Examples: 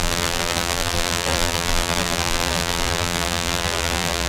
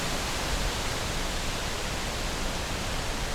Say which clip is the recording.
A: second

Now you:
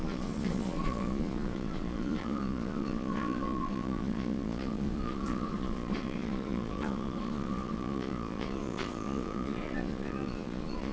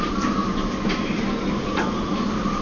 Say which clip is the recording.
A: second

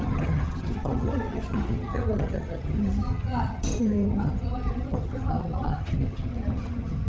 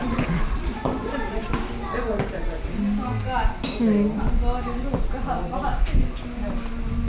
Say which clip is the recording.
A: second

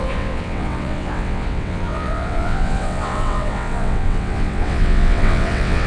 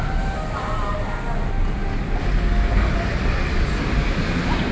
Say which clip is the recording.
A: second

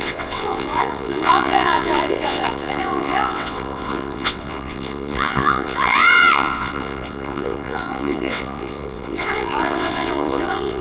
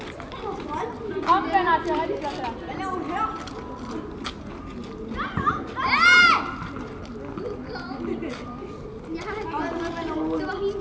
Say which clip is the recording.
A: second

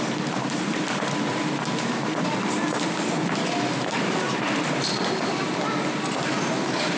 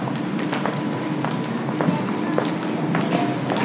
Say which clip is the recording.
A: second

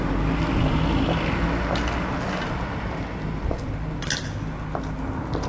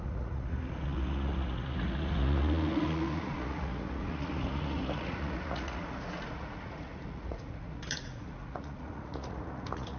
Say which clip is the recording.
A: first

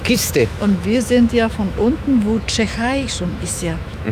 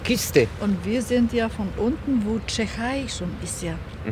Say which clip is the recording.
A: second